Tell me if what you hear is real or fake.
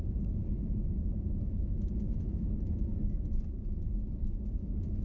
fake